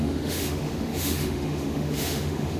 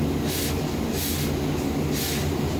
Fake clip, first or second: first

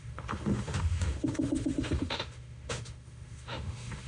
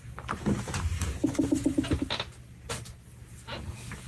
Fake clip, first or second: first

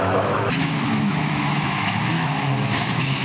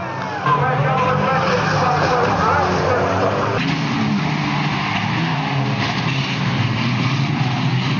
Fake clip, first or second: first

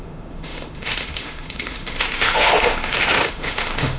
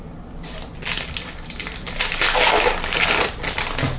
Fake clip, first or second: first